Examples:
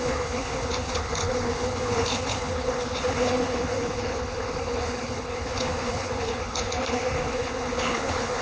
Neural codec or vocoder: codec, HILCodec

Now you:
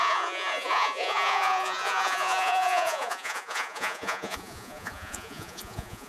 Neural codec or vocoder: vocoder, Vocos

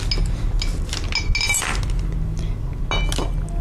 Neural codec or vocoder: none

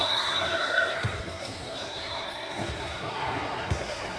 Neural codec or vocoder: codec, SNAC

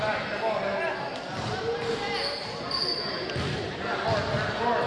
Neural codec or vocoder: none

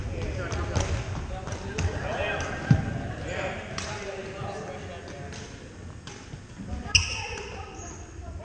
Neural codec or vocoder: none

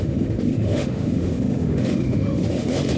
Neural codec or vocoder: autoencoder, DAC-VAE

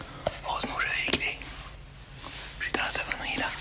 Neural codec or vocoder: none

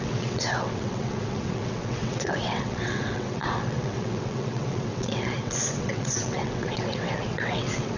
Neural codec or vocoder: vocoder, WaveNeXt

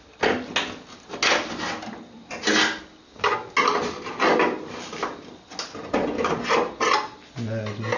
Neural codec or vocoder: none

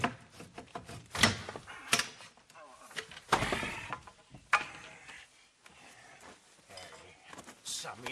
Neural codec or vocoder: none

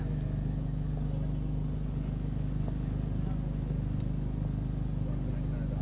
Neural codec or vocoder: none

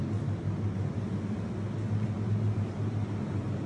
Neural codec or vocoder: none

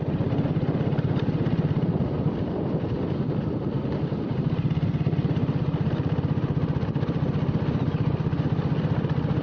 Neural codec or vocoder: none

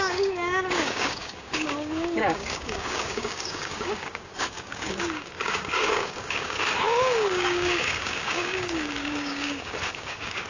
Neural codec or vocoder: codec, DAC